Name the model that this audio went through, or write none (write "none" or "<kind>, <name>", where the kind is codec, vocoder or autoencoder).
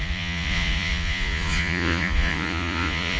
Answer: vocoder, Vocos